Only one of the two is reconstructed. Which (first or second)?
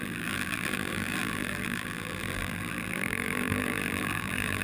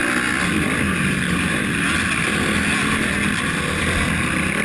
first